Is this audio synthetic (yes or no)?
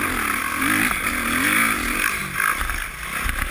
no